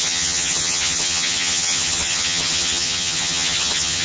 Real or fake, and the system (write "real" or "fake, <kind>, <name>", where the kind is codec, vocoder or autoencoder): fake, vocoder, HiFi-GAN